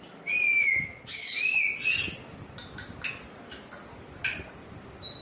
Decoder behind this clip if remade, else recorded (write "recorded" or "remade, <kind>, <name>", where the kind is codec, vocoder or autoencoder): recorded